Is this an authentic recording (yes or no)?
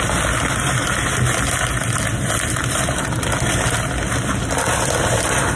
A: yes